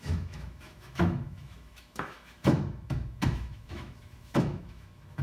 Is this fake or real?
fake